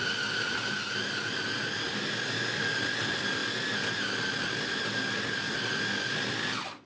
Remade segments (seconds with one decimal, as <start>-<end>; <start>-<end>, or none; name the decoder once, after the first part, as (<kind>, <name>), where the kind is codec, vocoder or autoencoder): none

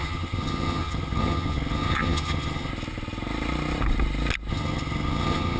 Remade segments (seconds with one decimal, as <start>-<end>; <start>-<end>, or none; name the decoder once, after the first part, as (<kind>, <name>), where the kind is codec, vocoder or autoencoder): 0.0-2.7 (vocoder, HiFi-GAN); 4.5-5.6

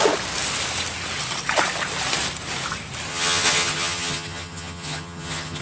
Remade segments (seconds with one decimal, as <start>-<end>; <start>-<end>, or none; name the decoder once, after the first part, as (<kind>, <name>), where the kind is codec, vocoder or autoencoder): 3.1-5.6 (vocoder, HiFi-GAN)

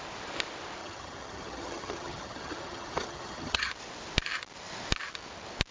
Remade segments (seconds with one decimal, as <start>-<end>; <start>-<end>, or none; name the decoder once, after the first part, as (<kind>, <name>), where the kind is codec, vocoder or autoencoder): 0.8-3.7 (vocoder, HiFi-GAN)

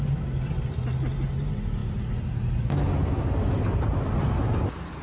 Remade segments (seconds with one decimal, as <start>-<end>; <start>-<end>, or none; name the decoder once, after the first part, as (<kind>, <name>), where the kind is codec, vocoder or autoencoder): none

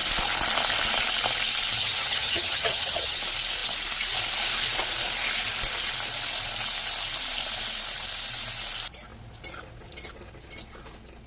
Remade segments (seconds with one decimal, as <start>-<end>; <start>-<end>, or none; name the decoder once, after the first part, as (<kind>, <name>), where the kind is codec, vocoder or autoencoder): 1.8-3.2 (vocoder, HiFi-GAN)